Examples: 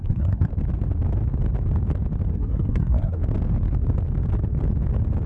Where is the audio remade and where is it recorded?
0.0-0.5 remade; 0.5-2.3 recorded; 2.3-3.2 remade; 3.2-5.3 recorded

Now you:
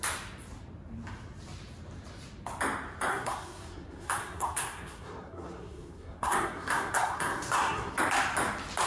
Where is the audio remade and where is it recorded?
0.0-3.1 recorded; 3.1-7.9 remade; 7.9-8.9 recorded

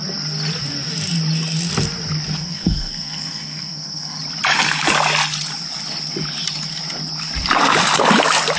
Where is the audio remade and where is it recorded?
0.0-2.4 recorded; 2.4-4.2 remade; 4.2-8.6 recorded